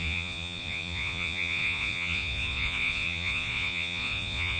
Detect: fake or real fake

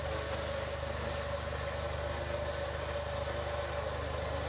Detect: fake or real real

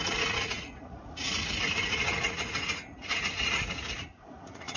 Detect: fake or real fake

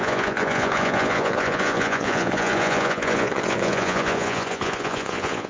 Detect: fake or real fake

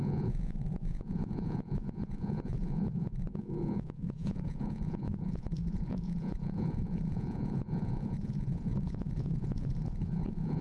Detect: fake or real fake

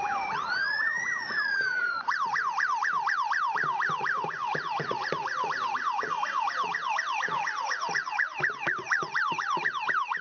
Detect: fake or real fake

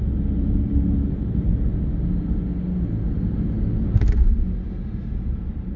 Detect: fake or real real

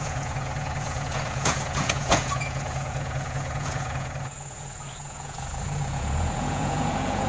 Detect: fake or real fake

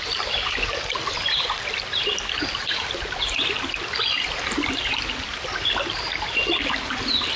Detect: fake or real real